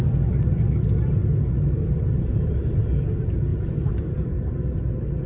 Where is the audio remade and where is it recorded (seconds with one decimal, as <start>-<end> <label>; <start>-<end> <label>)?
0.0-1.2 recorded; 1.2-2.8 remade; 2.8-3.5 recorded; 3.5-4.4 remade; 4.4-5.3 recorded